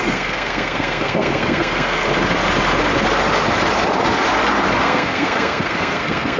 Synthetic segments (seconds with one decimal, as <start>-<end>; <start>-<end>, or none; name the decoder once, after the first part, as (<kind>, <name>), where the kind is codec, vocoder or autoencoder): 0.0-2.0 (codec, SNAC); 4.8-6.4